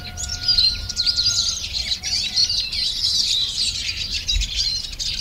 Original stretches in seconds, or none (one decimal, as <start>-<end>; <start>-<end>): 0.0-1.4; 2.0-2.4; 4.5-5.2